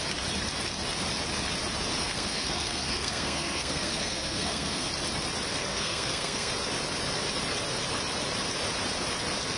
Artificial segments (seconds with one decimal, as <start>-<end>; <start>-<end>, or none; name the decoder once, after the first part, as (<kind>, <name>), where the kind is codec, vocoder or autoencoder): 2.0-4.9 (codec, SNAC); 5.7-6.5